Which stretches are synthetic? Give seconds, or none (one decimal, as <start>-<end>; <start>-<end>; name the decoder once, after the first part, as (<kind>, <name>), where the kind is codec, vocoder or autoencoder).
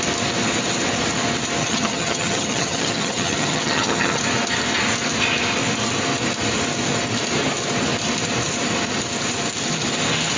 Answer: 1.6-4.2 (vocoder, HiFi-GAN)